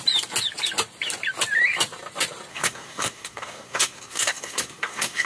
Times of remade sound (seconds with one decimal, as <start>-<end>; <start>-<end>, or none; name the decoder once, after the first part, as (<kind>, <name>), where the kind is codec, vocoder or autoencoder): 2.5-5.3 (codec, SNAC)